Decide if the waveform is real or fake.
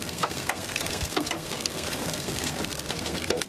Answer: fake